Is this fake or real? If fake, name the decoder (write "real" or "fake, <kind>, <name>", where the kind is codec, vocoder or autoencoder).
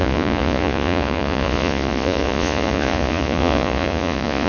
fake, vocoder, Vocos